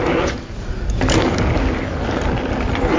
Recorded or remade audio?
recorded